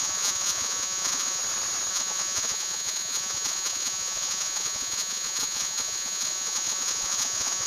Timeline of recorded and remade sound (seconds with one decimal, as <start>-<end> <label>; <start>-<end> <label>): 0.0-1.4 remade; 1.4-1.9 recorded; 1.9-7.7 remade